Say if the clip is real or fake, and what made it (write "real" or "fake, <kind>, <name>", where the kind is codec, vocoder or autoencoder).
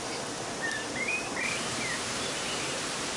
fake, vocoder, BigVGAN v2